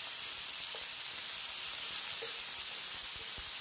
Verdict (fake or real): real